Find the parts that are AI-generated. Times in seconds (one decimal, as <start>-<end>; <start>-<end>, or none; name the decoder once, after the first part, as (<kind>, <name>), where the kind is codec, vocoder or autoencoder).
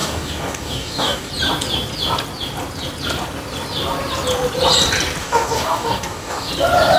0.0-1.3 (codec, DAC); 5.2-6.5